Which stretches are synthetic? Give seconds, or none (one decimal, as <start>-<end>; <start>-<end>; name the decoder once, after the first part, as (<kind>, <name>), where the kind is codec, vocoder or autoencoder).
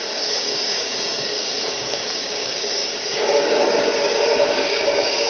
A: 0.0-5.3 (codec, DAC)